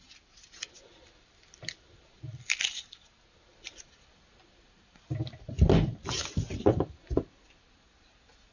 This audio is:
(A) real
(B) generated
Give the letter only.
A